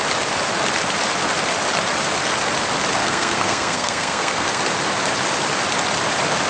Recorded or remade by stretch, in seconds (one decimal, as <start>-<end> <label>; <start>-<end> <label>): 0.0-3.0 recorded; 3.0-4.6 remade; 4.6-6.5 recorded